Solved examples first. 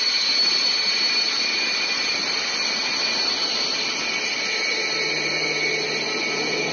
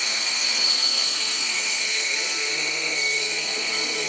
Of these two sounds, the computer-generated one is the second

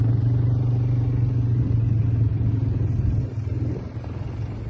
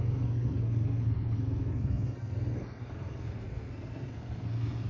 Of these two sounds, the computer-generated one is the second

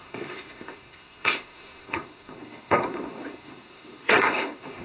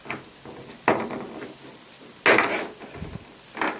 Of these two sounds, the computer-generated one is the first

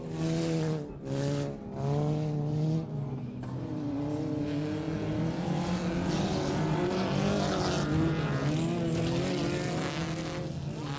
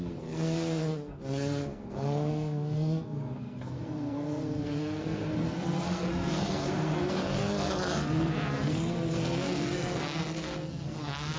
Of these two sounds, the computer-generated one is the second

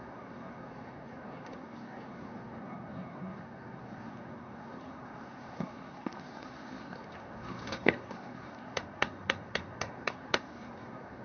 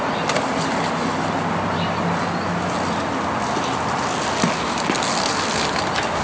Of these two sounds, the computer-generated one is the first